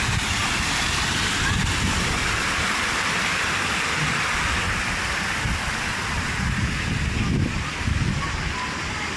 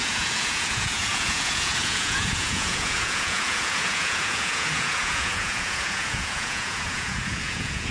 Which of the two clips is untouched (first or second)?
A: first